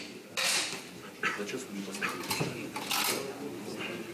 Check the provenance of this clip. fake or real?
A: real